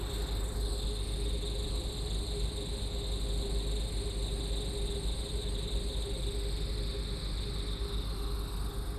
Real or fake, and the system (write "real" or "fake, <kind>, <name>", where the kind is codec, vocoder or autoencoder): real